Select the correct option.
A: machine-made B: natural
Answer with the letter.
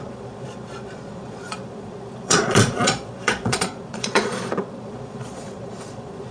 A